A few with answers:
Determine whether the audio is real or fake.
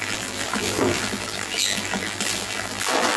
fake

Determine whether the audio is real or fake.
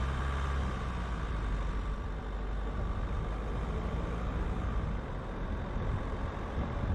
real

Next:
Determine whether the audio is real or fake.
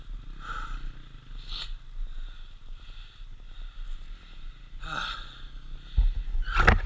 real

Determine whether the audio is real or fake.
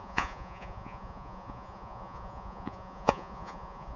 fake